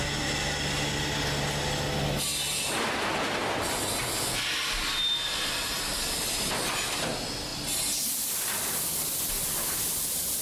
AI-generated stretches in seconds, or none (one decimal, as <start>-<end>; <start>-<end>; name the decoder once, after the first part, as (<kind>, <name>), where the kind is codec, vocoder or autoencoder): none